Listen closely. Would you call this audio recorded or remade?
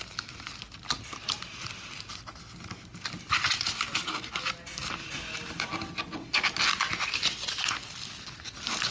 recorded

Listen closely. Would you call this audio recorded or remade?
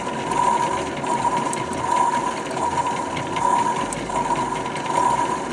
recorded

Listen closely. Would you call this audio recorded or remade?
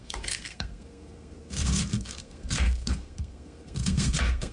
remade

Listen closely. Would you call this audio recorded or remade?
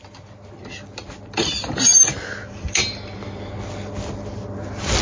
recorded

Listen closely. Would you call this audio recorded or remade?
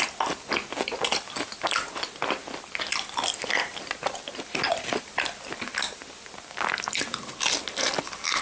recorded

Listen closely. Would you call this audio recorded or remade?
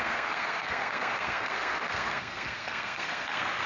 remade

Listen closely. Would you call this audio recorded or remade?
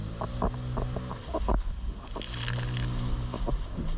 recorded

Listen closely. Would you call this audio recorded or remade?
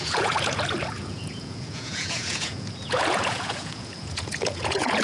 remade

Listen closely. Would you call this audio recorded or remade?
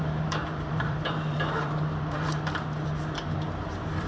remade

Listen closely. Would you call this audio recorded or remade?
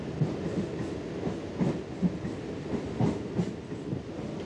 recorded